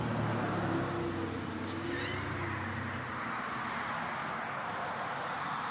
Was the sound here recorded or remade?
recorded